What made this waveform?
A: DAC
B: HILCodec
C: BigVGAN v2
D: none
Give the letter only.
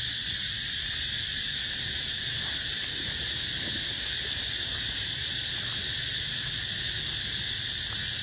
D